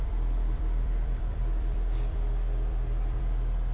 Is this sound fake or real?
fake